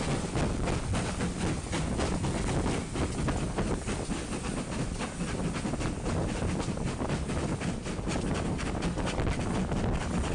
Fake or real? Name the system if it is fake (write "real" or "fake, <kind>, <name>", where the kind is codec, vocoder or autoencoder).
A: real